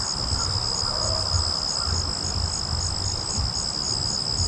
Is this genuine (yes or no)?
yes